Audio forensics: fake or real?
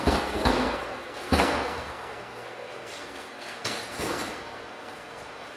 fake